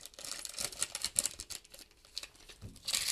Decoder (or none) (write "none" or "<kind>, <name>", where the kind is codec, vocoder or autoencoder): none